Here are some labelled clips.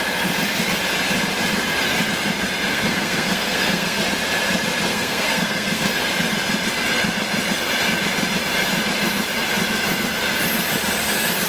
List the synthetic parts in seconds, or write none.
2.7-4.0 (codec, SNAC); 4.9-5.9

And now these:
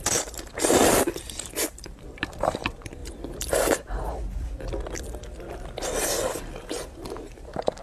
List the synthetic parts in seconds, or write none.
0.0-3.0 (vocoder, BigVGAN v2); 3.6-7.8

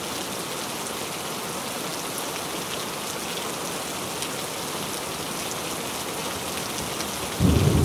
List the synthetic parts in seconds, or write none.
none

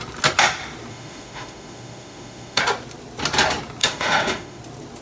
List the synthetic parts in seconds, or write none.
0.9-2.6 (autoencoder, DAC-VAE); 3.8-4.6

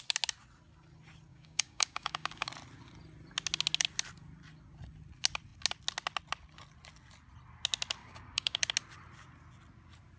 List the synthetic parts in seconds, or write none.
1.3-2.5 (codec, DAC); 8.0-8.6

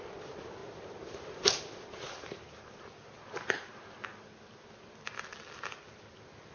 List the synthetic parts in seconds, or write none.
none